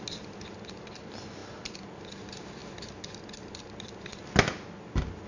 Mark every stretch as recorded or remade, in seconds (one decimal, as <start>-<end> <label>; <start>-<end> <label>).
0.0-5.3 recorded